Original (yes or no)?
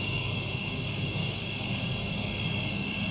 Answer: no